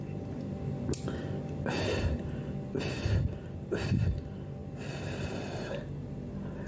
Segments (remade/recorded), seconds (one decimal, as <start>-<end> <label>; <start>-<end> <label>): 0.0-6.7 recorded